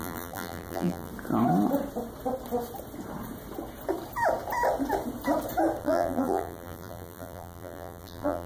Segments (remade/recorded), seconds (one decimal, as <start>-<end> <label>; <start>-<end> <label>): 0.0-1.1 remade; 1.1-5.8 recorded; 5.8-8.5 remade